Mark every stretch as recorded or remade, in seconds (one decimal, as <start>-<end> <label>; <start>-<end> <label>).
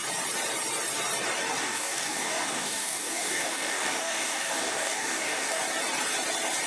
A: 0.0-1.6 recorded; 1.6-5.6 remade; 5.6-6.7 recorded